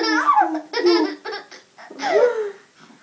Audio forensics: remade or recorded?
recorded